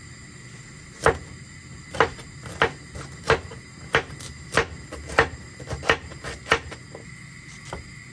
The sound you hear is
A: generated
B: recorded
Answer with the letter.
B